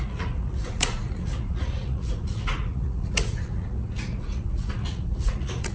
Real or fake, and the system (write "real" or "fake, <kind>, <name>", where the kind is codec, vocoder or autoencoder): fake, vocoder, Vocos